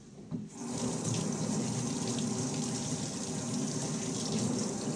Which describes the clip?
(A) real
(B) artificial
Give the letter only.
A